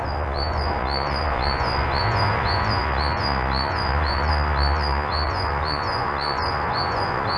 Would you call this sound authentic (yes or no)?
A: no